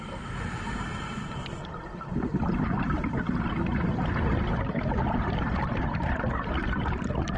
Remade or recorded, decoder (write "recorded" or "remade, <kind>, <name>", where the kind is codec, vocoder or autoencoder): recorded